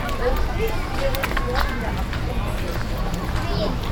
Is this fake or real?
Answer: real